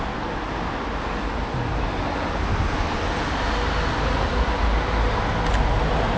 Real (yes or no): yes